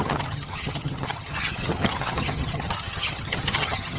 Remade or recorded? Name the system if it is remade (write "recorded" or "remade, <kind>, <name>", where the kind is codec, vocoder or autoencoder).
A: remade, vocoder, HiFi-GAN